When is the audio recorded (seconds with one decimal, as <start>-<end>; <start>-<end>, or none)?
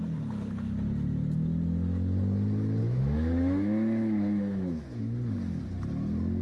0.0-2.8; 5.0-6.4